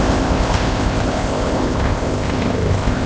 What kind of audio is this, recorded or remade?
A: remade